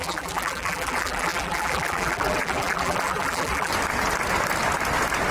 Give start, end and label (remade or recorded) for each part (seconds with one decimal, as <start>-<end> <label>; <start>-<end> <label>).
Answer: 0.0-3.7 remade; 3.7-5.3 recorded